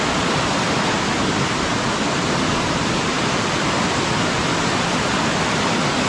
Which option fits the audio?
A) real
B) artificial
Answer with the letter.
B